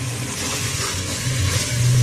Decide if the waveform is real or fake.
fake